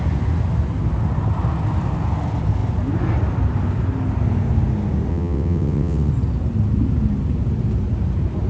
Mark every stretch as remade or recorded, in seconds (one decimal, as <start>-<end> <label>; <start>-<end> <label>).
0.0-5.1 recorded; 5.1-6.1 remade; 6.1-8.5 recorded